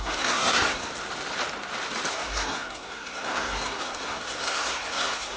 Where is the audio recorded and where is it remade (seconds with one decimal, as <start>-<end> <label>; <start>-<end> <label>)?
0.0-0.9 remade; 0.9-2.1 recorded; 2.1-5.4 remade